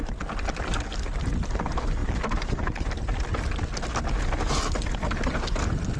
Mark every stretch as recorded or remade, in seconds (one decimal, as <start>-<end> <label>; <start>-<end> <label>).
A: 0.0-6.0 recorded